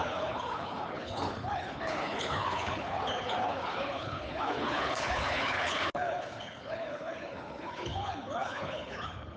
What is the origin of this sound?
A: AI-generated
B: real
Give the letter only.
A